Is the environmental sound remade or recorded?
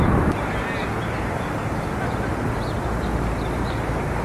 recorded